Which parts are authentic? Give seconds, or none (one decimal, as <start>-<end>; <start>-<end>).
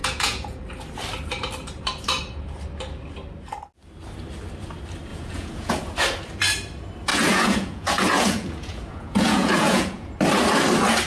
0.6-5.1; 5.7-7.1; 10.1-11.1